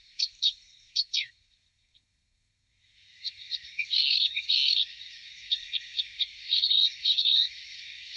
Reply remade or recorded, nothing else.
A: remade